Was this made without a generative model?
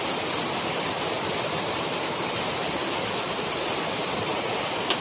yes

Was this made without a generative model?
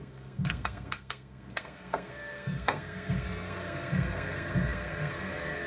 no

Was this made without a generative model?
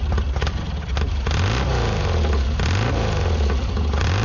yes